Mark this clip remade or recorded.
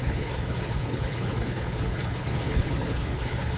remade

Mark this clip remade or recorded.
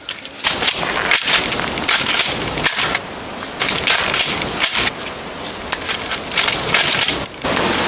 recorded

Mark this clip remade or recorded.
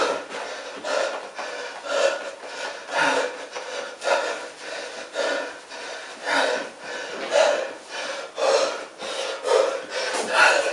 recorded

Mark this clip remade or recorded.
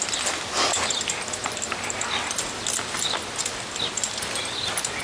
recorded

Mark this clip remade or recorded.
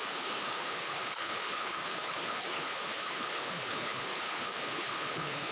remade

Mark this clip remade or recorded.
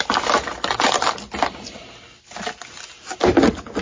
recorded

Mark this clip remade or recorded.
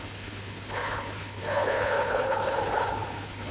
remade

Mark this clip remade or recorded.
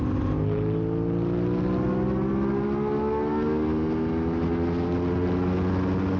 recorded